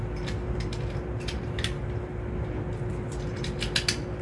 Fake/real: real